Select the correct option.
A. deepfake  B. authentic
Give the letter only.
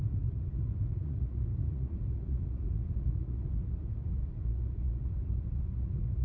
A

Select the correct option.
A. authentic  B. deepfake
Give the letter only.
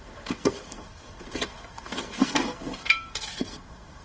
B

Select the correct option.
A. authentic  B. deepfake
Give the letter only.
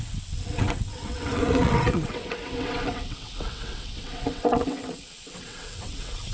B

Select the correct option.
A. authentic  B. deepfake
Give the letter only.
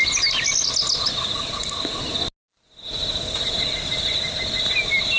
A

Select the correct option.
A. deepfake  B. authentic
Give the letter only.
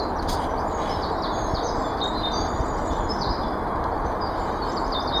B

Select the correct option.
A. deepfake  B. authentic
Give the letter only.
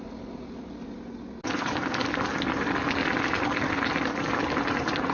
B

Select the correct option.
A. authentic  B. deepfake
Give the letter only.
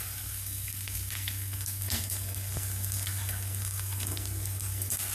B